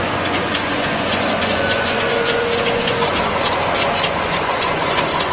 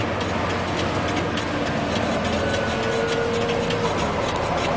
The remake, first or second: first